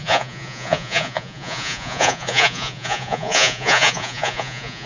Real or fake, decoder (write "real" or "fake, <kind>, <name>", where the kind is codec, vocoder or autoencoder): fake, vocoder, Vocos